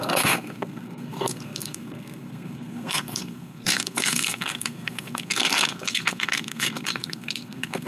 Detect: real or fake fake